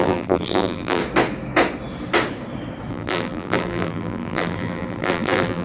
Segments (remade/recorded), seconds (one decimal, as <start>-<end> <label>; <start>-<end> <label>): 0.0-1.0 remade; 1.0-2.9 recorded; 2.9-5.6 remade